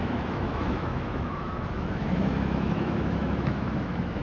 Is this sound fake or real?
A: fake